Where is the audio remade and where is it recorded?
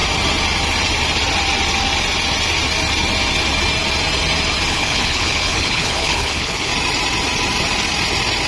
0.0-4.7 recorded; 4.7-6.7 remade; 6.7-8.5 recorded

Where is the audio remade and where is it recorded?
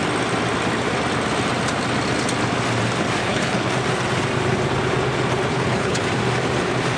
0.0-3.2 recorded; 3.2-3.7 remade; 3.7-5.5 recorded; 5.5-6.0 remade; 6.0-7.0 recorded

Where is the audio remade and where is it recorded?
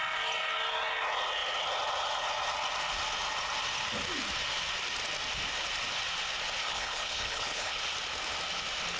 0.0-6.6 recorded; 6.6-7.8 remade; 7.8-9.0 recorded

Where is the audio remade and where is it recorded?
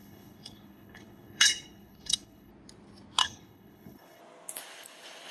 0.0-2.5 remade; 2.5-3.2 recorded; 3.2-4.2 remade; 4.2-5.3 recorded